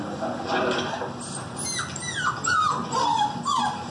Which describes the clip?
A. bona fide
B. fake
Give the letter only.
A